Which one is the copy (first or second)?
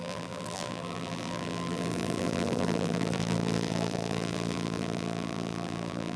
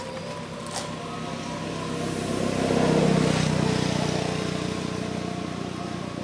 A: first